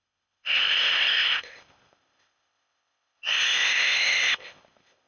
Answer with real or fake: fake